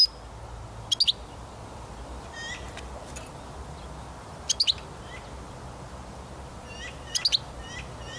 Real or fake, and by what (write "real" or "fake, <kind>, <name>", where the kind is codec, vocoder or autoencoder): real